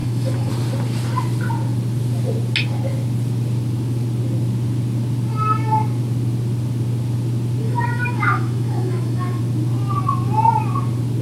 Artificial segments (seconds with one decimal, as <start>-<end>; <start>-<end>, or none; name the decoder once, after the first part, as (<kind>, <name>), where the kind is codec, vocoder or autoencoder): 0.0-0.5 (autoencoder, DAC-VAE); 7.6-9.4